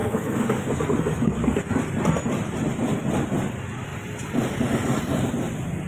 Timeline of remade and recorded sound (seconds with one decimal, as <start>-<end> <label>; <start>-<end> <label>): 0.0-1.7 remade; 1.7-5.9 recorded